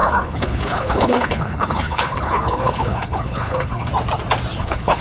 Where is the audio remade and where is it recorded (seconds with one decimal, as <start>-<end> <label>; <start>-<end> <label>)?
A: 0.0-3.9 remade; 3.9-4.6 recorded; 4.6-5.0 remade